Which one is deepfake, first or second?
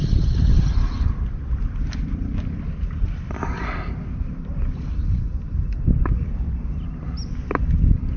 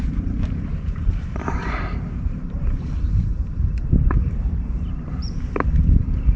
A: second